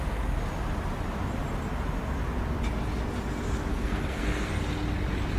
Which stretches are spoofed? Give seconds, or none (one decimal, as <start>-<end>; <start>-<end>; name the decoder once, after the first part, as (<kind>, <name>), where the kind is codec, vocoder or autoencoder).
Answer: 3.7-4.5 (codec, SNAC)